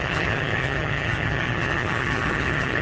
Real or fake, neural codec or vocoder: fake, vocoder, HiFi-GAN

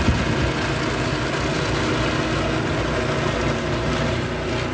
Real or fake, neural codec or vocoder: real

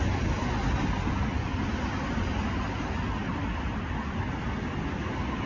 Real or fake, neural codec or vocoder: real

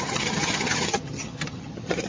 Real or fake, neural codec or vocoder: fake, vocoder, HiFi-GAN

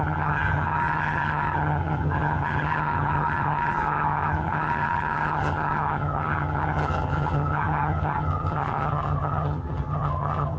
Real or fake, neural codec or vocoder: fake, vocoder, HiFi-GAN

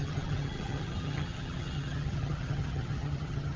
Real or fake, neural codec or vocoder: fake, vocoder, HiFi-GAN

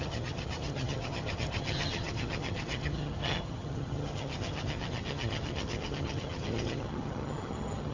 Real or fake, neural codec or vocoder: fake, vocoder, HiFi-GAN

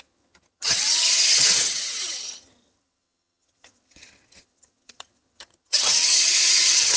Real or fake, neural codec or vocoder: fake, vocoder, HiFi-GAN